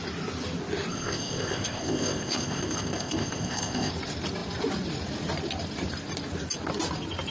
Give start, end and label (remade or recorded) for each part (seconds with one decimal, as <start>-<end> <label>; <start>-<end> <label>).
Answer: 0.0-0.9 recorded; 0.9-3.9 remade; 3.9-7.3 recorded